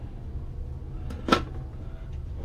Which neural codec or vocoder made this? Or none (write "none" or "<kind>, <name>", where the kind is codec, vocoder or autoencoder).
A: vocoder, BigVGAN v2